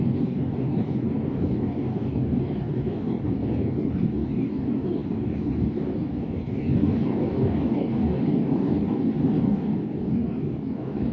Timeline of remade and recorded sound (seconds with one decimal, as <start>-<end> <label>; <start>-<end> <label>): 0.0-11.1 remade